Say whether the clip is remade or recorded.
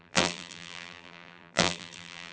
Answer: remade